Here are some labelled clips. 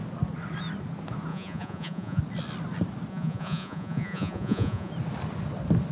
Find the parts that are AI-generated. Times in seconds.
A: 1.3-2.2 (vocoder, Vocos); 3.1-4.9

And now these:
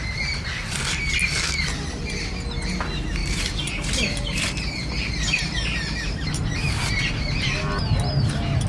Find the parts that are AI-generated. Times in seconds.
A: 3.2-7.1 (vocoder, BigVGAN v2)